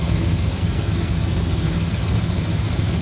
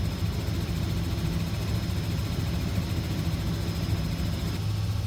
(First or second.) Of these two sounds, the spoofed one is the first